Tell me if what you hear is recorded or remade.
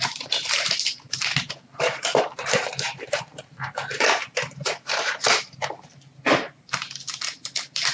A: remade